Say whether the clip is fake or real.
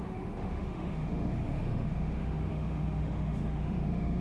fake